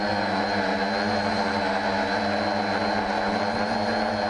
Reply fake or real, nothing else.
real